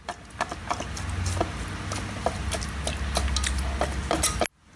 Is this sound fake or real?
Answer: real